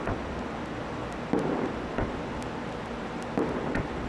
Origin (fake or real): real